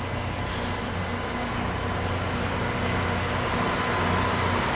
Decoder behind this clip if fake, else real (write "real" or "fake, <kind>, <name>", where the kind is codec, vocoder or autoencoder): real